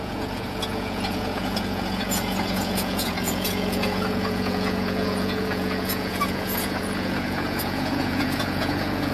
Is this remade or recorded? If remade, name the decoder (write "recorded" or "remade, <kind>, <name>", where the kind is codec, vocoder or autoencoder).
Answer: remade, vocoder, Vocos